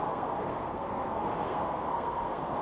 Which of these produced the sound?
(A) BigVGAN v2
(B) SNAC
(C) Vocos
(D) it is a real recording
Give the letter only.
B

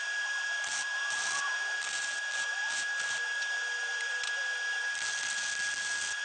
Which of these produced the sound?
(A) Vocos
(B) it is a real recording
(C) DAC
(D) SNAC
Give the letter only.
B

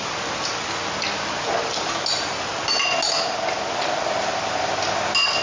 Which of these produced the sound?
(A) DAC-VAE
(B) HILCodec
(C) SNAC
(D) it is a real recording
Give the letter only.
D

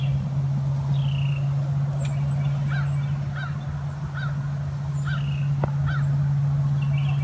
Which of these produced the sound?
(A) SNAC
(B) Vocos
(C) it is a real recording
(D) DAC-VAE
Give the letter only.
C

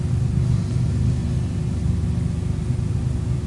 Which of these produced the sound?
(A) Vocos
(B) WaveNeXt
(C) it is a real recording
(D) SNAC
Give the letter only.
C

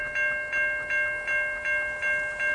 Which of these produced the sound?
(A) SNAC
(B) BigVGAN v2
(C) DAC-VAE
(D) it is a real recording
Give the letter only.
D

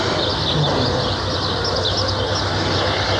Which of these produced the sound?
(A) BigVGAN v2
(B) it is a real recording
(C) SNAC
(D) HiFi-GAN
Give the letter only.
B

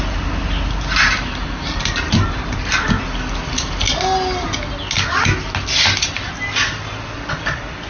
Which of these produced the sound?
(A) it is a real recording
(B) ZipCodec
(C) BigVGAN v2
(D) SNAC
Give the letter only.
A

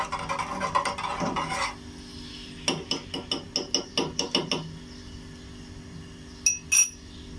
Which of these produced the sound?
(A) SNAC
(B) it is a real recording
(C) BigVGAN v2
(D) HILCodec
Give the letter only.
B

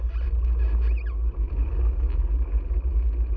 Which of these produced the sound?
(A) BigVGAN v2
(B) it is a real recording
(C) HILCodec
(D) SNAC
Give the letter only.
B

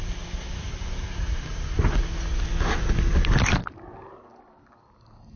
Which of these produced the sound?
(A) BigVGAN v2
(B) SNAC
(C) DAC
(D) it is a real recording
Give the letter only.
D